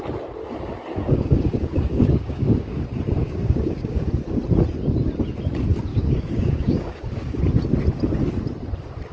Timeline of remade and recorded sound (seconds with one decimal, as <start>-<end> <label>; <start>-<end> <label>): 0.0-0.9 recorded; 0.9-2.7 remade; 2.7-3.2 recorded; 3.2-4.1 remade; 4.1-5.9 recorded; 5.9-7.3 remade; 7.3-9.1 recorded